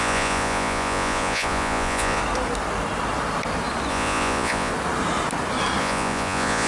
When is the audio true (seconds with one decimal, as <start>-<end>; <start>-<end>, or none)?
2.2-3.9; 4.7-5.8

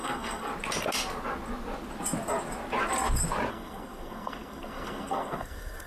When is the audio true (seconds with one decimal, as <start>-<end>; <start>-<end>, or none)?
0.5-3.5

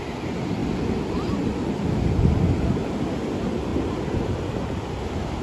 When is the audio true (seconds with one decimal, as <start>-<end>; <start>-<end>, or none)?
0.0-0.6; 2.7-3.7; 5.0-5.4

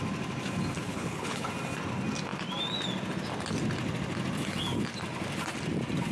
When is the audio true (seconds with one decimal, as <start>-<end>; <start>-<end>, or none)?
0.0-0.9; 1.5-6.1

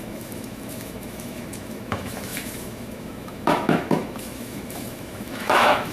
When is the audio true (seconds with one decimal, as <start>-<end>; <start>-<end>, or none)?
none